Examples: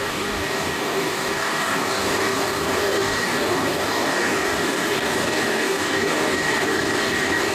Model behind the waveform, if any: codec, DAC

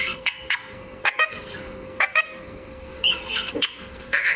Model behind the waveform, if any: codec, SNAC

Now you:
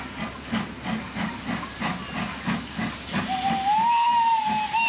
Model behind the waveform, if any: none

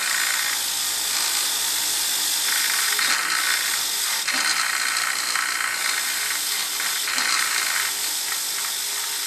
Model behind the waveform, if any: none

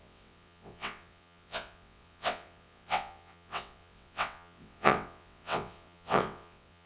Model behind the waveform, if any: vocoder, WaveNeXt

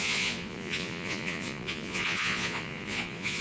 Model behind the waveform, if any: vocoder, Vocos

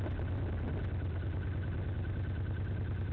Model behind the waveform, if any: none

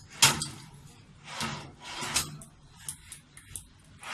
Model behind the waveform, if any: none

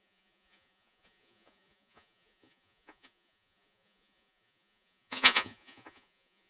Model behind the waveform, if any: vocoder, Vocos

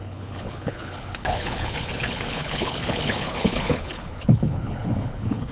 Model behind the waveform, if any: codec, HILCodec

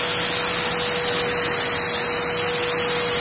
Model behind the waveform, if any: none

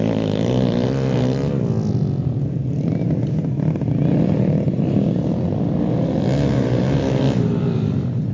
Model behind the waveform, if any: none